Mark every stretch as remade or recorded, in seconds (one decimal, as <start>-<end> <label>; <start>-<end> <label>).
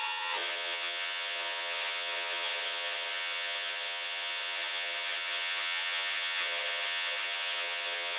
0.0-8.2 remade